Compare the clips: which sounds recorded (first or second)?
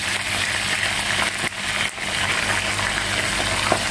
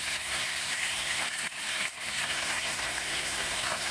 first